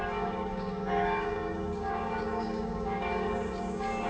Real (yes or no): no